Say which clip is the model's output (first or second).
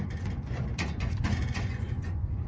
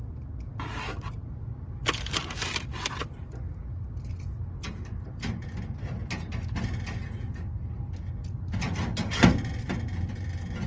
first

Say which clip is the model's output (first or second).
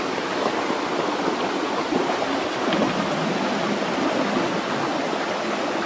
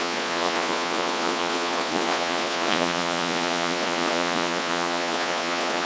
second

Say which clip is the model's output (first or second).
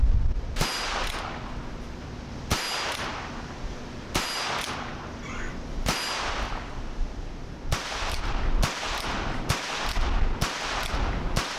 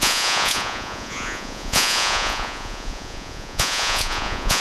second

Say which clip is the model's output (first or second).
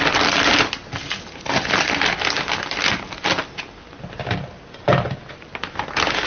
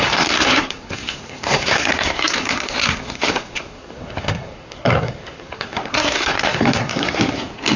second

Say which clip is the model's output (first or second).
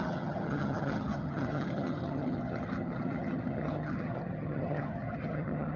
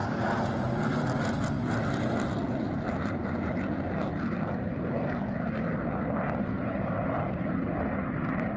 first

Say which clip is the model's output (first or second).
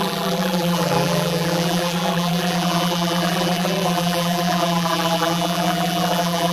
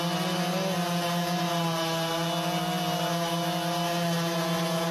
first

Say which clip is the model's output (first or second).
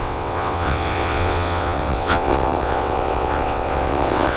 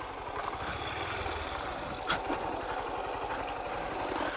first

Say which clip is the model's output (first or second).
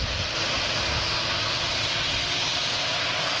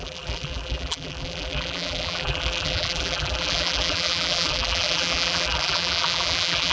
second